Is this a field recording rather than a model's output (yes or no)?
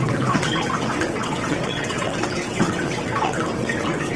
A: no